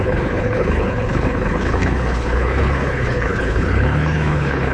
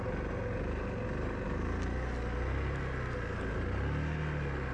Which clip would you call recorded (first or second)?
second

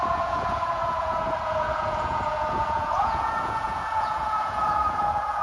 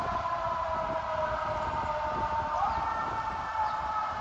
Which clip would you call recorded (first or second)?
second